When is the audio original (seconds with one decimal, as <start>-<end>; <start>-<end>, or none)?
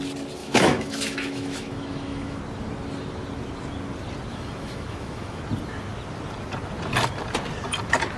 0.0-0.4; 2.4-4.3; 5.4-8.2